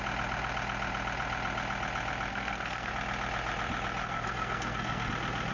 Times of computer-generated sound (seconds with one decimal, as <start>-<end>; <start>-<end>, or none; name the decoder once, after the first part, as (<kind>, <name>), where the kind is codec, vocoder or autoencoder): 2.3-2.9 (codec, SNAC); 4.0-5.1